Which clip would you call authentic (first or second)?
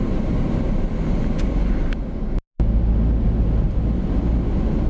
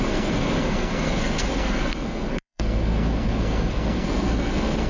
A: first